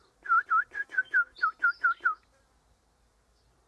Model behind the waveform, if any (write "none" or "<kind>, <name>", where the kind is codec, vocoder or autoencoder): none